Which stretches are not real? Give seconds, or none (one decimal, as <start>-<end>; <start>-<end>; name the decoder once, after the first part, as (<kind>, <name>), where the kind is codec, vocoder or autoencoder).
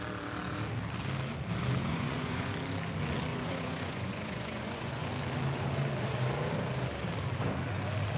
1.9-2.5 (vocoder, Vocos); 3.3-5.1